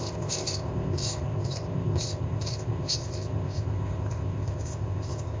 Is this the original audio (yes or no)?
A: no